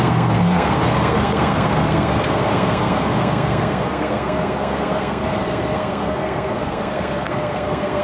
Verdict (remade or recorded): remade